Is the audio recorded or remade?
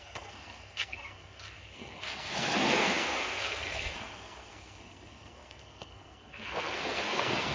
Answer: remade